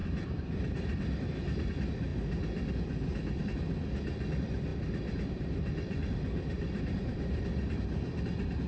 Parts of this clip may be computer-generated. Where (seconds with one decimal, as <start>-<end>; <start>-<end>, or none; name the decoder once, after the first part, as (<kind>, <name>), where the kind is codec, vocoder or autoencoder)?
0.0-1.7 (vocoder, BigVGAN v2); 4.7-8.2